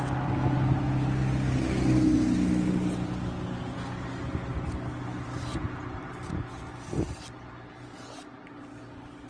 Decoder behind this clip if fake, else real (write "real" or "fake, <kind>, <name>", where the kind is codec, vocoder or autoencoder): real